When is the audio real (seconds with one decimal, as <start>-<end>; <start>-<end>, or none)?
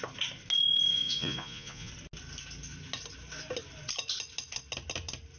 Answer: 0.0-0.9; 1.9-5.4